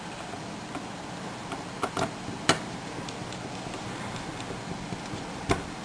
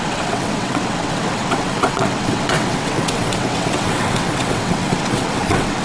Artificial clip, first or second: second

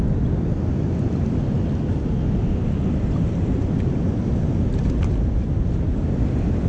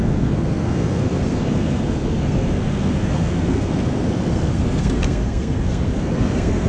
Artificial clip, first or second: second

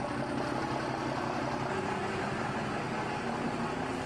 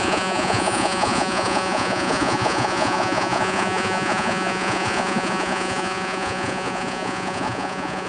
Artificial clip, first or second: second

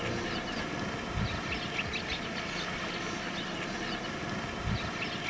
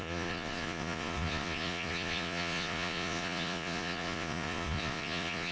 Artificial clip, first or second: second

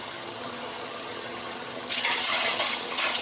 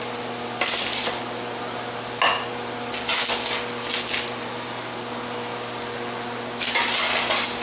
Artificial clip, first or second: first